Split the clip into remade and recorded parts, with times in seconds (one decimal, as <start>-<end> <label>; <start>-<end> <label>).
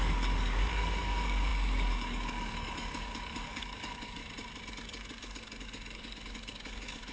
0.0-4.2 remade; 4.2-4.7 recorded; 4.7-7.1 remade